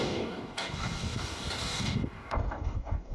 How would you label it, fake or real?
fake